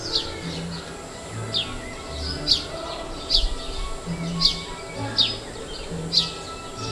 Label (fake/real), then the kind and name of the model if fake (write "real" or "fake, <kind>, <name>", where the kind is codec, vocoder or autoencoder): real